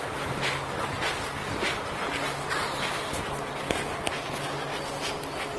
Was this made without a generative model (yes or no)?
yes